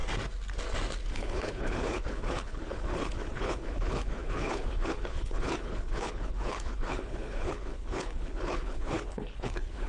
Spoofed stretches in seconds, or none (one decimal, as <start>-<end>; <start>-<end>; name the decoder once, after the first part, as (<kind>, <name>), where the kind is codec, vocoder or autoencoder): 1.1-9.9 (codec, HILCodec)